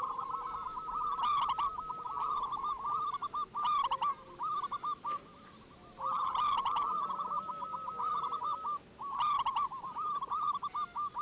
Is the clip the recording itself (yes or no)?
yes